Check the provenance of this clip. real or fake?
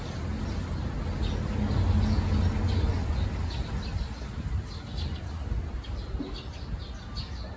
real